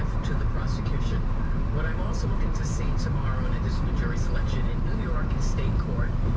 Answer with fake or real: real